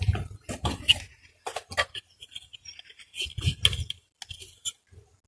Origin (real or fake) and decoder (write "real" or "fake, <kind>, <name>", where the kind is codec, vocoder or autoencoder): real